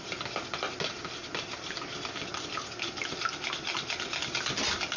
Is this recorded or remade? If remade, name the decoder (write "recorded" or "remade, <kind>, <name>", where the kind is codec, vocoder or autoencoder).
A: recorded